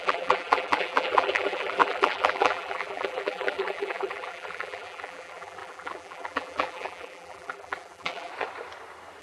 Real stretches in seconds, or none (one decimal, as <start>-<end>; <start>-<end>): 8.3-9.2